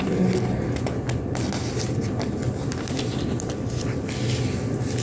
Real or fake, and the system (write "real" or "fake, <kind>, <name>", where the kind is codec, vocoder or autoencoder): real